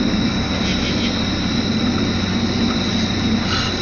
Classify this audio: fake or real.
real